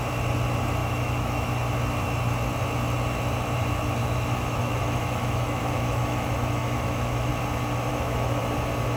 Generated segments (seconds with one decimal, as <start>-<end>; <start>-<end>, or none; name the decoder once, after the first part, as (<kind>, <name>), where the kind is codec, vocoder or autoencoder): 0.8-1.5 (autoencoder, DAC-VAE); 4.0-7.3; 7.9-8.4